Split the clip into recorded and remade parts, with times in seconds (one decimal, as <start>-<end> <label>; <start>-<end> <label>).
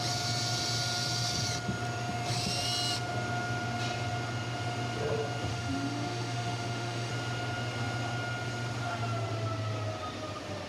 0.0-5.5 recorded; 5.5-7.1 remade; 7.1-10.7 recorded